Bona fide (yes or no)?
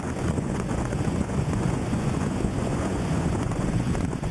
no